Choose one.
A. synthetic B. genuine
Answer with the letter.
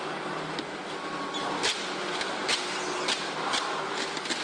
B